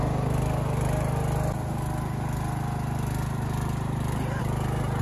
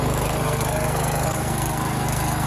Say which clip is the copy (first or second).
second